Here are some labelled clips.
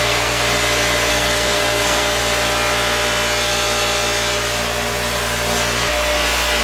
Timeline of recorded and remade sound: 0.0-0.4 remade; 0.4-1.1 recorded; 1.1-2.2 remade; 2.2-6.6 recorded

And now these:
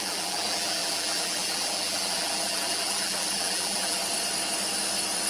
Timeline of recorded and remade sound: 0.0-4.0 remade; 4.0-5.3 recorded

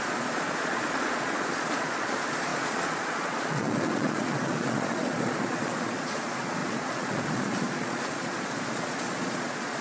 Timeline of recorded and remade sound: 0.0-9.8 remade

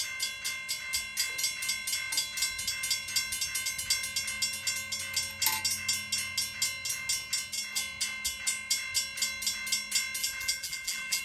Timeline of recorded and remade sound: 0.0-10.2 recorded; 10.2-11.2 remade

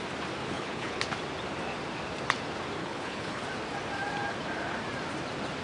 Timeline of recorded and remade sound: 0.0-0.4 recorded; 0.4-1.0 remade; 1.0-2.8 recorded; 2.8-3.4 remade; 3.4-5.6 recorded